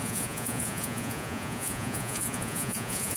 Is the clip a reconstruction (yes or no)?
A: yes